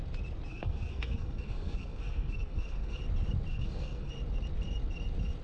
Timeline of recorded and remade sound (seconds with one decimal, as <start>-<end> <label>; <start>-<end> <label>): 0.0-0.5 recorded; 0.5-3.0 remade; 3.0-3.5 recorded; 3.5-4.1 remade; 4.1-5.4 recorded